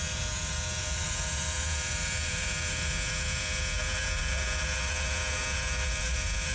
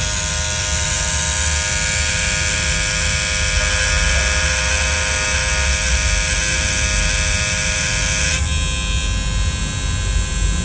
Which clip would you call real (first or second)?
second